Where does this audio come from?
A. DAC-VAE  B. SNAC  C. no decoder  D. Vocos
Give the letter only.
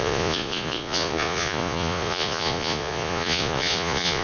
D